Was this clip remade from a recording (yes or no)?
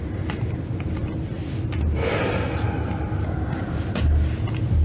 no